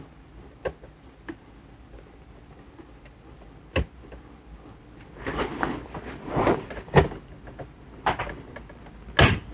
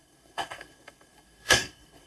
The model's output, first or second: second